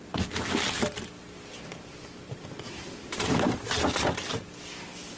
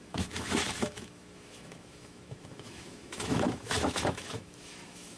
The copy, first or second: second